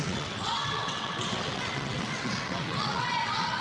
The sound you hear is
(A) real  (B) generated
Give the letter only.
B